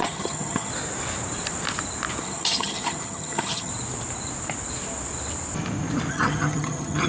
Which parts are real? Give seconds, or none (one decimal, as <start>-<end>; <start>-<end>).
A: 0.7-2.2; 3.7-6.1

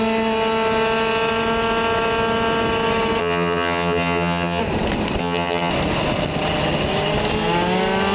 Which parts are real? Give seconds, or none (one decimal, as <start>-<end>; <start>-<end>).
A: 0.0-3.2; 4.6-5.2; 5.7-8.1

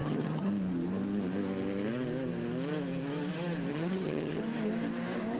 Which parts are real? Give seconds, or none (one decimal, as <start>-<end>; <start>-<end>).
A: 0.5-3.7; 4.4-5.4

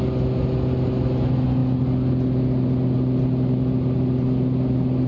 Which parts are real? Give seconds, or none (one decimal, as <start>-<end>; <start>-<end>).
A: 0.0-5.1